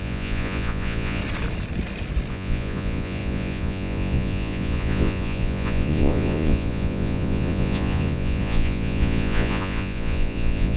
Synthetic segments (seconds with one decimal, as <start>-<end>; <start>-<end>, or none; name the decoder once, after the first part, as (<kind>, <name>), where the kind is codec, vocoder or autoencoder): 0.0-1.2 (vocoder, Vocos); 2.3-10.8